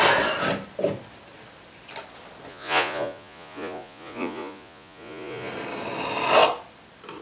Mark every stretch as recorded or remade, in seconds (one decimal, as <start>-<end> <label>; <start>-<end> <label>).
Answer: 0.0-2.5 recorded; 2.5-5.5 remade; 5.5-7.2 recorded